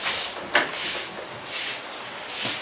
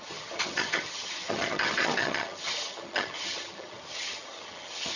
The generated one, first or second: second